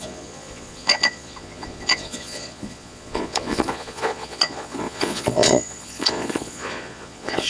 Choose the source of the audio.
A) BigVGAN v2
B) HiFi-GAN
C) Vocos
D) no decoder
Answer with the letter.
C